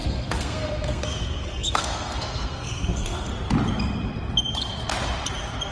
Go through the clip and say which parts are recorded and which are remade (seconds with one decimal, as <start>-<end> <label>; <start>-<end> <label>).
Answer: 0.0-3.3 remade; 3.3-5.7 recorded